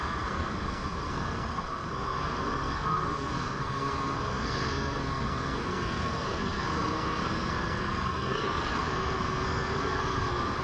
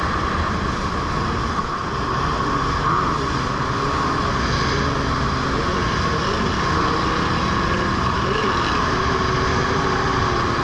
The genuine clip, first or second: second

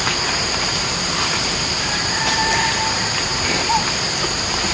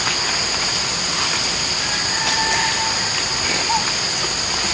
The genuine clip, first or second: second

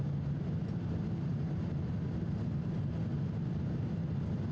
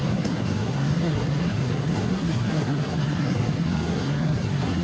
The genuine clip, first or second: first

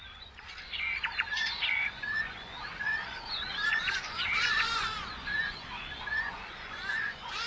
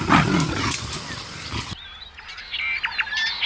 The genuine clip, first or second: second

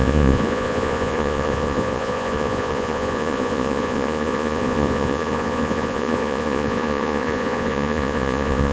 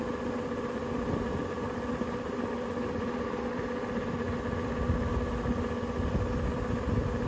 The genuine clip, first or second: second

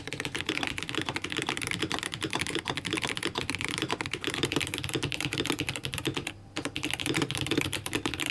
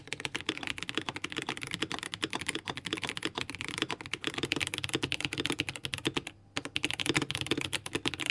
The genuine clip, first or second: second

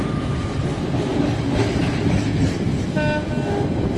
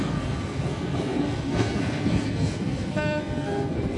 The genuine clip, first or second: first